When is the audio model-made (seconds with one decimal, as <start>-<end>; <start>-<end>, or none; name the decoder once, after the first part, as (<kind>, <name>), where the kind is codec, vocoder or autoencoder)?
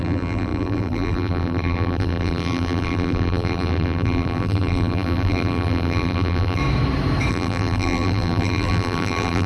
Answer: 0.0-6.6 (vocoder, BigVGAN v2); 7.3-9.5